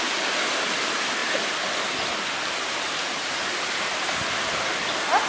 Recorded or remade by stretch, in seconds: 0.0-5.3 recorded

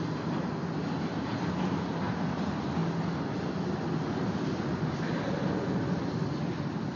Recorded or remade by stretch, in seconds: 0.0-7.0 recorded

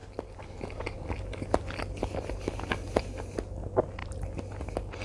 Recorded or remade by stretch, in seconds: 0.0-5.0 recorded

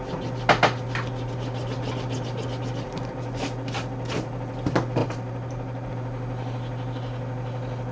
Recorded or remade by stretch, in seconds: 0.0-5.0 recorded; 5.0-5.9 remade; 5.9-7.9 recorded

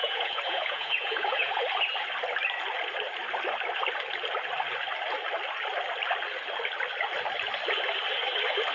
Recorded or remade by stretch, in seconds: 0.0-1.6 remade; 1.6-8.7 recorded

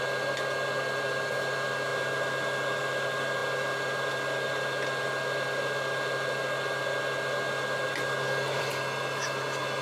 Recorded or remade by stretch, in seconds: 0.0-9.8 recorded

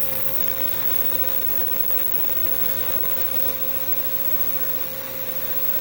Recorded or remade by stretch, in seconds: 0.0-3.5 remade; 3.5-5.8 recorded